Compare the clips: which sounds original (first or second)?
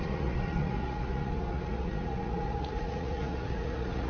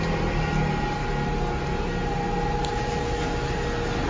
second